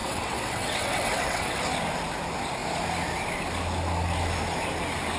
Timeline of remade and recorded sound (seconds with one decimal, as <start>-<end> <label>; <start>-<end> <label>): 0.0-1.6 remade; 1.6-5.2 recorded

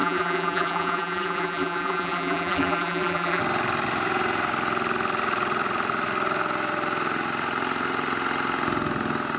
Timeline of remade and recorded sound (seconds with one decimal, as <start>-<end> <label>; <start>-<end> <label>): 0.0-3.4 remade; 3.4-9.4 recorded

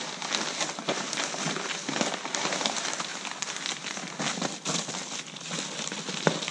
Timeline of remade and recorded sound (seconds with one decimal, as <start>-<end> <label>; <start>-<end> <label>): 0.0-6.5 recorded

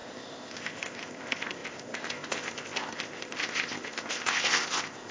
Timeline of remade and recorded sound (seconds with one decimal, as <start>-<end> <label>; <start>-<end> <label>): 0.0-5.1 remade

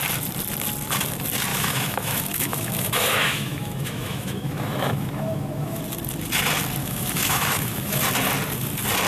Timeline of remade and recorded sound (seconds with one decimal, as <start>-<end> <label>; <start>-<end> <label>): 0.0-1.5 recorded; 1.5-5.8 remade; 5.8-6.8 recorded; 6.8-8.0 remade; 8.0-9.1 recorded

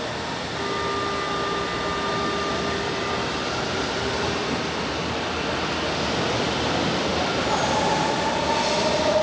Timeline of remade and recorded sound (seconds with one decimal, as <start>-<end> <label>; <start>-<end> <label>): 0.0-2.5 recorded; 2.5-4.9 remade; 4.9-7.1 recorded; 7.1-9.2 remade

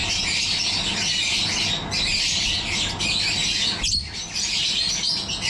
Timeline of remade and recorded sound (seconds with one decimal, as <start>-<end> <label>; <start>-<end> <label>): 0.0-5.5 recorded